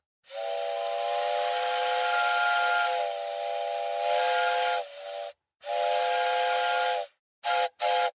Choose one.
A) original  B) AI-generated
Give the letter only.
A